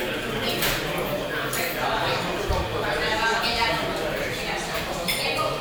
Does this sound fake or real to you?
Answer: fake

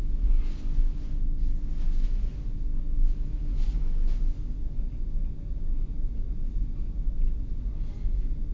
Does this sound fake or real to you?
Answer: real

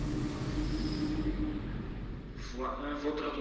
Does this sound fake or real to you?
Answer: real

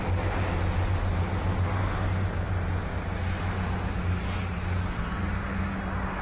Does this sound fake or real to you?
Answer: real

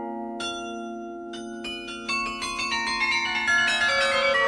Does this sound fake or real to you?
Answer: real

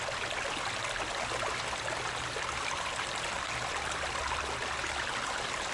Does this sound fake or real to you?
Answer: real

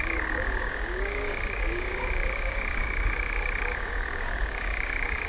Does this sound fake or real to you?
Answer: fake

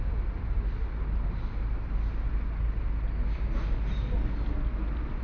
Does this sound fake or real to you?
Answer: real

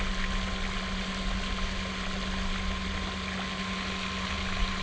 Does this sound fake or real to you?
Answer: real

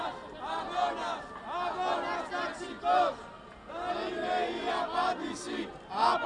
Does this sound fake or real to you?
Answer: real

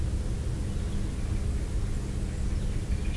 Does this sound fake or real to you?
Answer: real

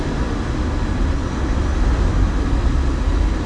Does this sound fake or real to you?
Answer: real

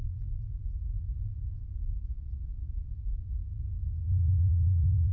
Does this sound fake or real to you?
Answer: fake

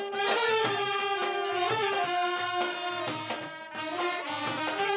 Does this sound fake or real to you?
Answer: real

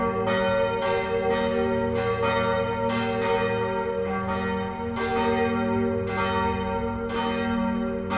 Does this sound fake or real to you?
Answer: real